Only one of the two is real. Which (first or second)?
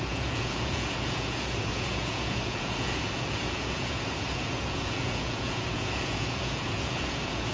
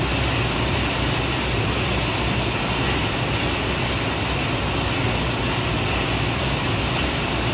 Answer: second